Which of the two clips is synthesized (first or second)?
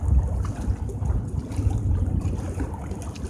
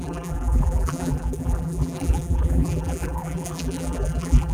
second